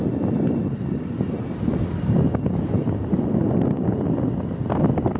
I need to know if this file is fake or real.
real